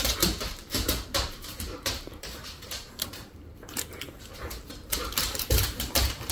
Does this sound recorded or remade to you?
remade